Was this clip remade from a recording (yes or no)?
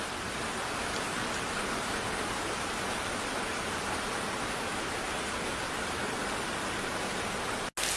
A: no